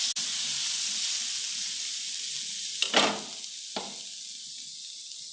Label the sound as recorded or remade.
recorded